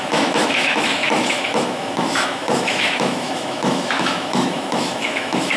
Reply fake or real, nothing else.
fake